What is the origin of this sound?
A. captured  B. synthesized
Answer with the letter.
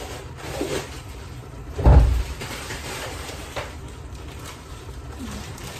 B